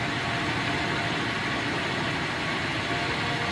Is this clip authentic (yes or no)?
yes